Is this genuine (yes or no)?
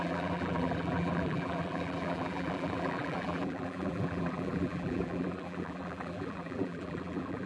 no